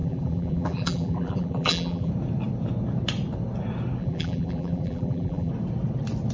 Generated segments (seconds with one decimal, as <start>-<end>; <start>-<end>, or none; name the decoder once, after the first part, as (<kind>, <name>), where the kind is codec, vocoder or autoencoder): 0.0-2.1 (vocoder, BigVGAN v2); 4.0-5.5